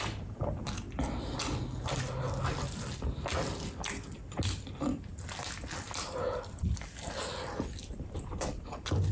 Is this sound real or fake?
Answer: real